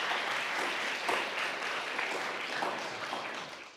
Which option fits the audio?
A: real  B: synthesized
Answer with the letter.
A